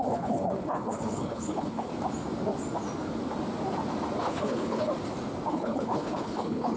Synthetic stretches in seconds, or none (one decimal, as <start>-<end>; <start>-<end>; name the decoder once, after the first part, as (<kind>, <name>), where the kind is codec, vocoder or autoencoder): 0.0-1.9 (codec, HILCodec); 4.2-4.9; 5.5-6.8